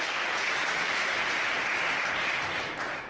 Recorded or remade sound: recorded